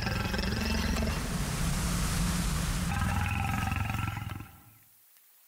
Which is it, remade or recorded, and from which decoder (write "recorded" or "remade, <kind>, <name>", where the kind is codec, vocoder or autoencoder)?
recorded